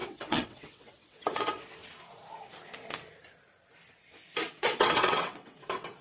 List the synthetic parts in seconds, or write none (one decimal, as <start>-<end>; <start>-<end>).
0.0-1.8; 4.5-6.0